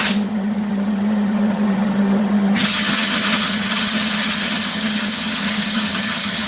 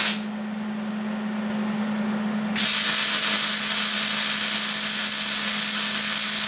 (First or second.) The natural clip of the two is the second